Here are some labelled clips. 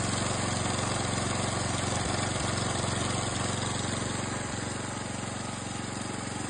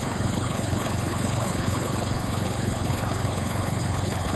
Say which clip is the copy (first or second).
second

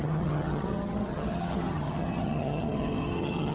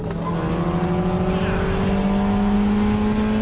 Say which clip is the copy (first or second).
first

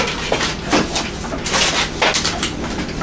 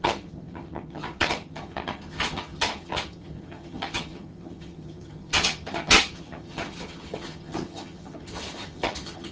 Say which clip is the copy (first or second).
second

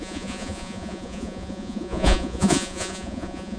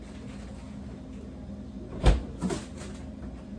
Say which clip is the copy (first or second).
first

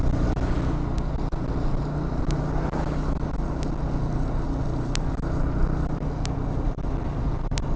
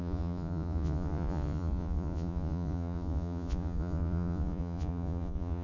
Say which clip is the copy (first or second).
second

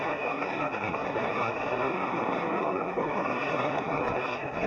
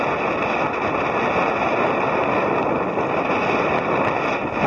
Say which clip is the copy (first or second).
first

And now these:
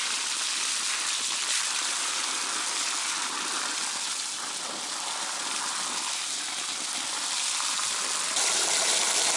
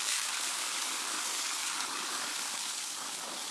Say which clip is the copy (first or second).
second